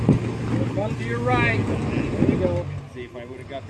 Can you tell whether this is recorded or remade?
recorded